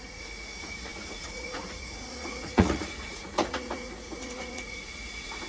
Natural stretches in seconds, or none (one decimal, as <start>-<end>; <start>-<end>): none